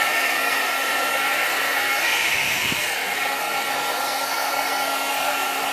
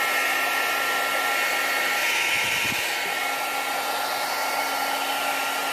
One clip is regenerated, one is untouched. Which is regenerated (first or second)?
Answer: first